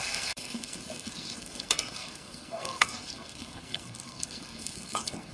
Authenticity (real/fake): fake